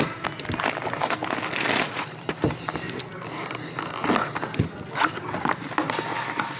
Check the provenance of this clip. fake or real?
real